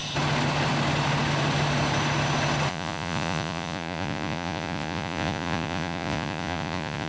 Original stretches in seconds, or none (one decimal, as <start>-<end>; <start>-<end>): 0.0-2.7